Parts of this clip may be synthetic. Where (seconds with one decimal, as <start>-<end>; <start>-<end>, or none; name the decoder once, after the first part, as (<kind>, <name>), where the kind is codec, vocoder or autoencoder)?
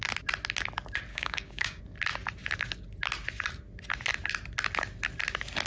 1.1-1.8 (codec, DAC)